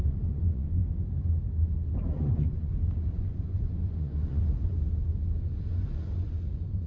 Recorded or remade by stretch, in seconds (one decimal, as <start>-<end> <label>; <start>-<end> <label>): 0.0-0.8 remade; 0.8-2.2 recorded; 2.2-2.7 remade; 2.7-3.2 recorded; 3.2-4.7 remade; 4.7-5.5 recorded; 5.5-6.9 remade